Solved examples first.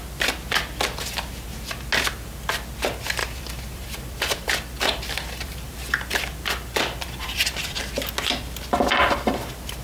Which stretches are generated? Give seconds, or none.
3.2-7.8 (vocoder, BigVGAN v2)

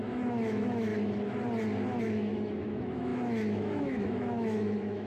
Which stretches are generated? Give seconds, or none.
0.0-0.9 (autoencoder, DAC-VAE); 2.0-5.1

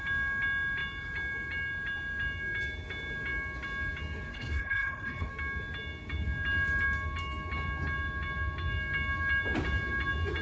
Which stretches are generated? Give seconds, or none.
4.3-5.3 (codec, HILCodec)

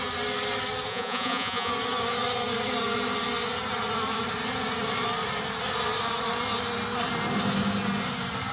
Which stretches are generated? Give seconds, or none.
0.9-1.7 (vocoder, Vocos)

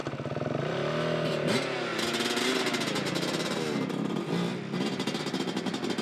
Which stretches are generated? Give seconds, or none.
none